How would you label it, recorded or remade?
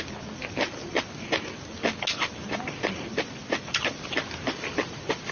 recorded